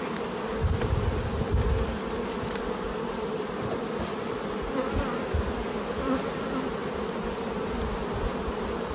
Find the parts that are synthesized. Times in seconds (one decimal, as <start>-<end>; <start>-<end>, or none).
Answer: 6.8-7.8